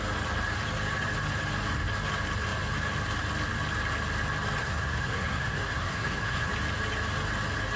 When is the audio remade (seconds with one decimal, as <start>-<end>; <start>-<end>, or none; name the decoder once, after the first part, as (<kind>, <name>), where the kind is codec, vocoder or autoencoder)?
4.6-6.5 (codec, SNAC)